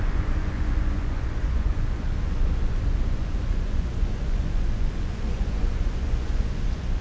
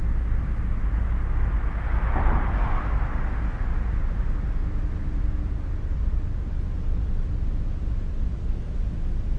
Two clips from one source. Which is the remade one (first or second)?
first